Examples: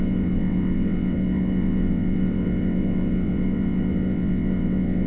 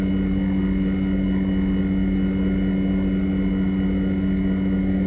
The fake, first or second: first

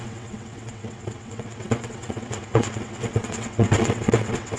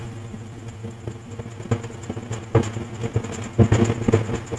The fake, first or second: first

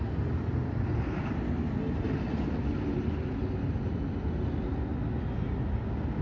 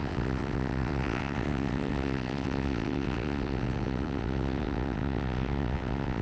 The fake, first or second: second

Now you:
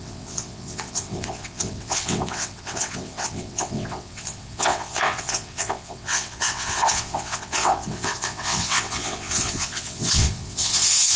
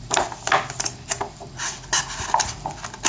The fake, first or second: first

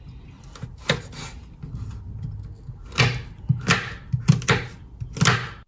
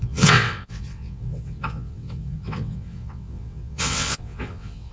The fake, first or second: second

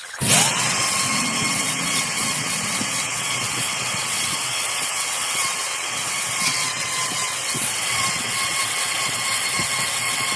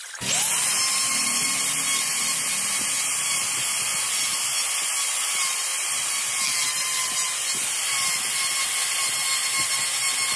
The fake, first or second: first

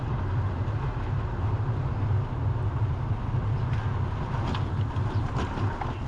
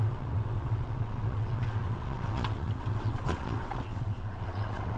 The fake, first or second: second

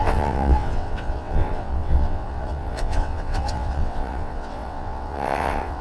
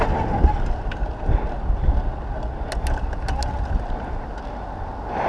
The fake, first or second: first